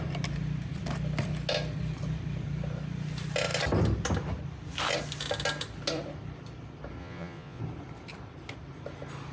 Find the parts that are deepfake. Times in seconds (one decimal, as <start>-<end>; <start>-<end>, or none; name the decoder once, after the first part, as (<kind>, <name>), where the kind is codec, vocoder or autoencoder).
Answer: 7.0-7.6 (vocoder, Vocos)